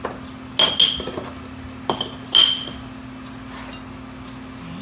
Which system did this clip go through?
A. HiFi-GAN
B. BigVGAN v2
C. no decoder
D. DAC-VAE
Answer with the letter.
C